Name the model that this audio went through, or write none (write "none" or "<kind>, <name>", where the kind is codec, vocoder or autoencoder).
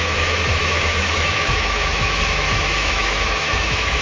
autoencoder, DAC-VAE